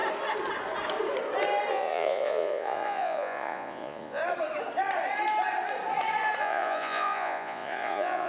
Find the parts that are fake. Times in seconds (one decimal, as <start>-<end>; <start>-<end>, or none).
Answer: 1.7-4.2; 6.4-8.3